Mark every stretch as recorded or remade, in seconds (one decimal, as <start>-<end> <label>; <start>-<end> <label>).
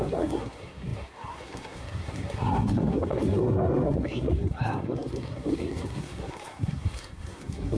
0.0-7.8 remade